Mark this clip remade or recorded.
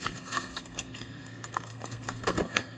remade